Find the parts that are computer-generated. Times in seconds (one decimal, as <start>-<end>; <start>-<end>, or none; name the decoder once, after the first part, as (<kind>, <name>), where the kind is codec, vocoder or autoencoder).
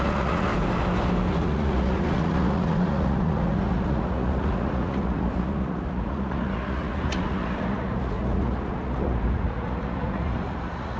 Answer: 0.0-0.5 (vocoder, Vocos); 1.3-11.0